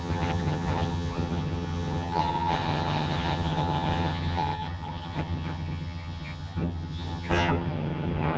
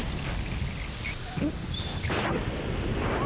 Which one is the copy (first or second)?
first